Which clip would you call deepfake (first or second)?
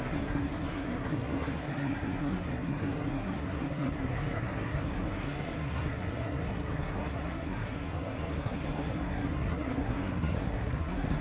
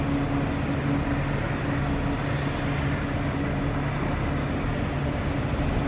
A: first